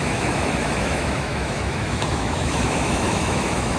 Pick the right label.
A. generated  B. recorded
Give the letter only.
A